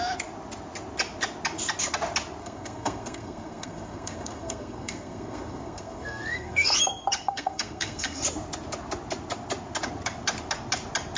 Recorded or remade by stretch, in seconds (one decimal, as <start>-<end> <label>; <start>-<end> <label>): 0.0-2.4 recorded; 2.4-6.8 remade; 6.8-7.2 recorded; 7.2-8.2 remade; 8.2-11.2 recorded